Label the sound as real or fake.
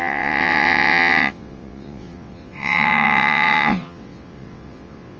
fake